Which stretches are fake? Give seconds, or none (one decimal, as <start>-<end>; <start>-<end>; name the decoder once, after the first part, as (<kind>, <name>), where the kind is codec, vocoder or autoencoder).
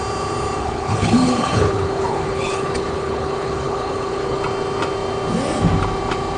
0.6-4.4 (codec, HILCodec)